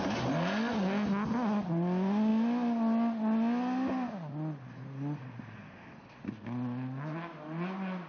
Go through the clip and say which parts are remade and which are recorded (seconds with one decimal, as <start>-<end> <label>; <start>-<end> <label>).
0.0-8.1 recorded

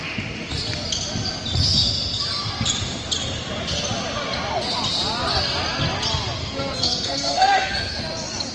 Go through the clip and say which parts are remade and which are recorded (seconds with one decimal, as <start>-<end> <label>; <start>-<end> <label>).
0.0-6.4 recorded; 6.4-8.0 remade; 8.0-8.5 recorded

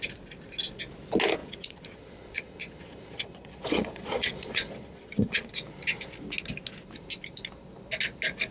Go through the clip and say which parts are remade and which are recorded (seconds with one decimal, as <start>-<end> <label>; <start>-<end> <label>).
0.0-1.4 recorded; 1.4-5.5 remade; 5.5-8.5 recorded

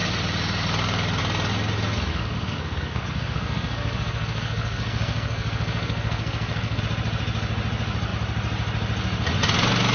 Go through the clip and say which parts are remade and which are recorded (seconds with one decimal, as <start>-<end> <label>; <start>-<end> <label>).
0.0-2.1 recorded; 2.1-6.8 remade; 6.8-9.9 recorded

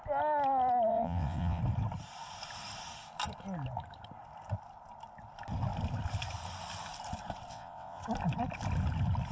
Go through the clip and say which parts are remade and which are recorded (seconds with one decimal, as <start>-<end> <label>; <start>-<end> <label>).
0.0-0.9 recorded; 0.9-1.6 remade; 1.6-7.5 recorded; 7.5-8.0 remade; 8.0-9.3 recorded

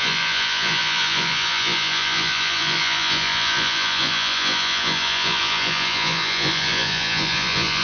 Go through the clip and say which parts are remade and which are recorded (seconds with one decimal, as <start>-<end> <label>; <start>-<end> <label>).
0.0-7.8 remade

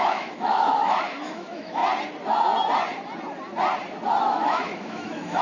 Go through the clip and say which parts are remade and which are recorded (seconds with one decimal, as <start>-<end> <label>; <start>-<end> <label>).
0.0-1.8 remade; 1.8-4.2 recorded; 4.2-5.4 remade

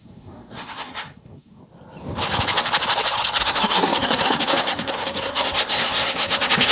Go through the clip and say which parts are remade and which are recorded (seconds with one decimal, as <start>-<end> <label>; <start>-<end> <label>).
0.0-1.6 remade; 1.6-3.4 recorded; 3.4-6.7 remade